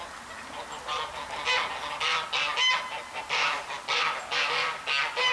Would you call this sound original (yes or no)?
yes